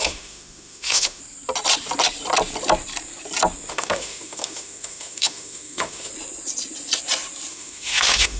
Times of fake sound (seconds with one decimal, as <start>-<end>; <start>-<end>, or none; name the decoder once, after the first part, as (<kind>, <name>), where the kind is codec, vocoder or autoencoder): 0.0-1.2 (autoencoder, DAC-VAE); 3.7-6.1; 7.5-8.4